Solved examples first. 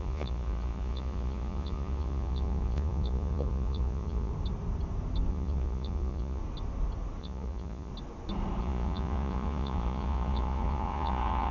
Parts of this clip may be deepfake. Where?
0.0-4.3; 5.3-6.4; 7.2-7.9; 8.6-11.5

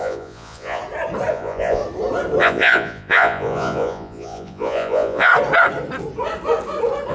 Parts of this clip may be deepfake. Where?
0.0-0.8; 1.3-1.8; 2.4-5.3

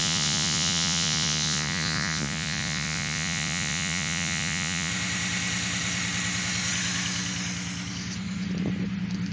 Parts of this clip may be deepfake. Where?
0.0-4.9

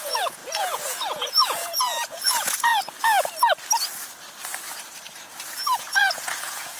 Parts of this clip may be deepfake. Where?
0.0-2.7; 5.8-6.8

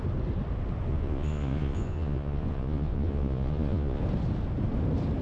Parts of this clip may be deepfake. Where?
0.9-4.0

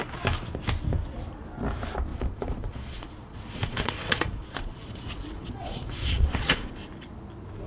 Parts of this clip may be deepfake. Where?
2.1-6.7